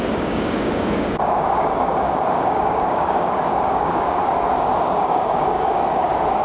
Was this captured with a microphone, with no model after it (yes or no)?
no